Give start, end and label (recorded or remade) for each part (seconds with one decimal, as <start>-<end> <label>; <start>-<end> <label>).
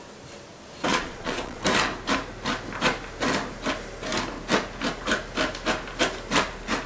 0.0-0.9 recorded; 0.9-1.6 remade; 1.6-6.9 recorded